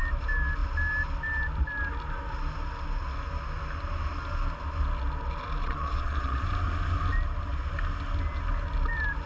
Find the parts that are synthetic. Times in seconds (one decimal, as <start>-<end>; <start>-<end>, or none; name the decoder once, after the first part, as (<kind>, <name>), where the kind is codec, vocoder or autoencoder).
5.6-6.4 (vocoder, Vocos)